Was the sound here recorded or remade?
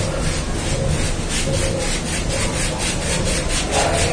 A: recorded